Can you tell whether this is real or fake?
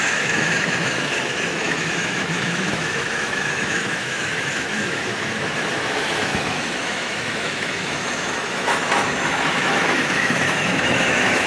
fake